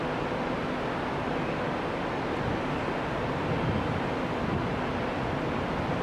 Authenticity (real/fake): real